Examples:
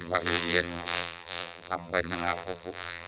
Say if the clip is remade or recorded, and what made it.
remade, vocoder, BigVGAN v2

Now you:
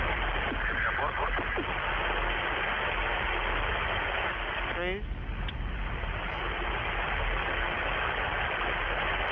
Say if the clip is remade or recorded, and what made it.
recorded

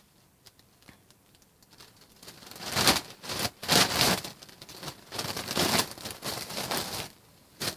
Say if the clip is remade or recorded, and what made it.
remade, vocoder, BigVGAN v2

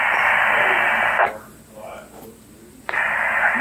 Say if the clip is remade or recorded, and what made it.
recorded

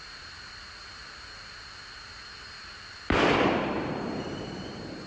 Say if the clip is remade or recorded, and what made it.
remade, vocoder, BigVGAN v2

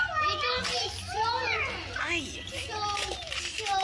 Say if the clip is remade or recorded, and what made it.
recorded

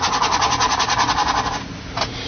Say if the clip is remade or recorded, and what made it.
recorded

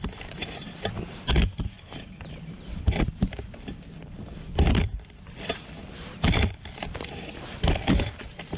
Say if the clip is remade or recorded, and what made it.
remade, vocoder, BigVGAN v2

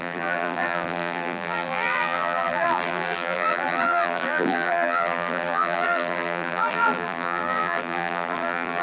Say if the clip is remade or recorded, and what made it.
remade, vocoder, BigVGAN v2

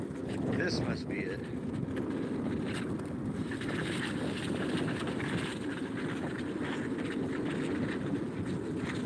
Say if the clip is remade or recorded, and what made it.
recorded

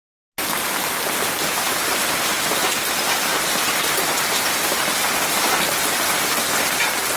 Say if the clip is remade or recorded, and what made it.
recorded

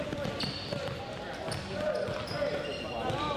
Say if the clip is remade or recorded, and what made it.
recorded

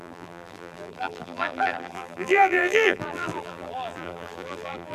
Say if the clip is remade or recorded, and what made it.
remade, vocoder, BigVGAN v2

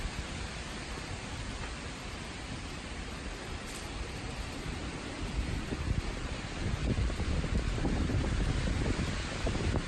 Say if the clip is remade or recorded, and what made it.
remade, vocoder, BigVGAN v2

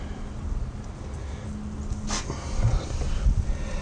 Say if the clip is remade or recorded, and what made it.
recorded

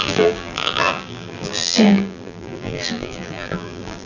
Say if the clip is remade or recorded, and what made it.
remade, vocoder, BigVGAN v2